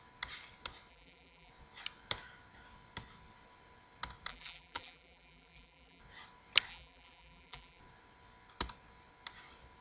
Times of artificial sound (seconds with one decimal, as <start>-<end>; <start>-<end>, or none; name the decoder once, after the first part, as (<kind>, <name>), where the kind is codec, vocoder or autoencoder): 0.9-1.5 (vocoder, BigVGAN v2); 4.3-6.0; 6.7-7.8

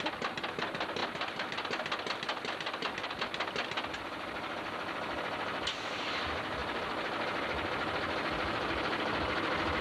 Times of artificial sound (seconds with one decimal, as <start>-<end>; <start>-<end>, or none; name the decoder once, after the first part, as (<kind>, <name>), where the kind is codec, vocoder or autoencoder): 1.0-1.7 (vocoder, BigVGAN v2); 2.3-3.2

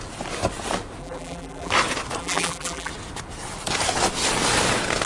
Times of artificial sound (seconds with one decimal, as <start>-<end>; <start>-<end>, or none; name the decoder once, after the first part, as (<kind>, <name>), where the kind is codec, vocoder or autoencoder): 1.0-1.7 (vocoder, BigVGAN v2); 2.2-2.9

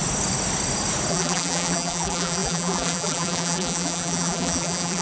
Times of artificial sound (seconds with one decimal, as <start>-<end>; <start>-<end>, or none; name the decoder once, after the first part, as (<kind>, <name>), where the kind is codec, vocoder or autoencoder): 1.1-5.0 (vocoder, BigVGAN v2)

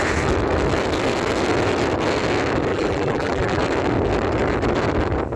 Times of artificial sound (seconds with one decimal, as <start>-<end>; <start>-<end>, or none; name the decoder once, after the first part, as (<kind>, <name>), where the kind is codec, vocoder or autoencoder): 2.7-3.6 (vocoder, BigVGAN v2)

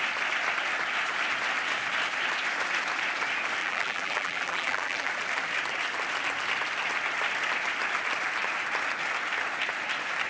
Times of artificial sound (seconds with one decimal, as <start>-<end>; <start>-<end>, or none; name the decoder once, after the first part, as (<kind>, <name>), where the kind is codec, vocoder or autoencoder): 3.6-5.1 (vocoder, BigVGAN v2)

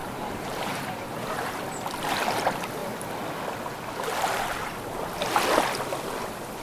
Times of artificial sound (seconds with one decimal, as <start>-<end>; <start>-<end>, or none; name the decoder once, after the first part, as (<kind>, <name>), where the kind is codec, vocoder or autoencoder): 0.0-1.6 (vocoder, BigVGAN v2)

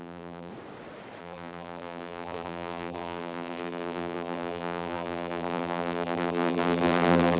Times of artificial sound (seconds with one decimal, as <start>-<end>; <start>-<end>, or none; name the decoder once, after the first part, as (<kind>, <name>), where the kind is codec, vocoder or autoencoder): 0.0-0.5 (vocoder, BigVGAN v2); 1.2-7.4